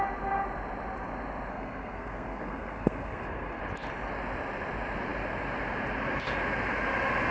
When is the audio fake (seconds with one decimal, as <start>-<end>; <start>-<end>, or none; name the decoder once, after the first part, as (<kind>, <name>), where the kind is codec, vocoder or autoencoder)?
1.5-3.6 (codec, SNAC)